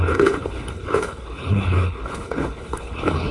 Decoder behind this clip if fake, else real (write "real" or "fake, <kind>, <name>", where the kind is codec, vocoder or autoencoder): fake, codec, HILCodec